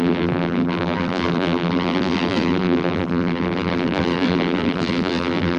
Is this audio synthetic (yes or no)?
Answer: yes